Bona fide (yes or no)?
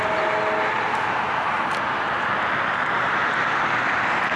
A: yes